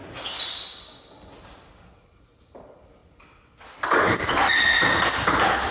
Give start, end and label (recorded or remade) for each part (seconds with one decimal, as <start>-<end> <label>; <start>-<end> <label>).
0.0-5.7 recorded